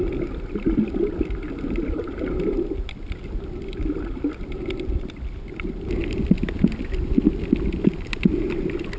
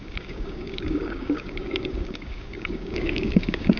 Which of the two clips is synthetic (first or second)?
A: second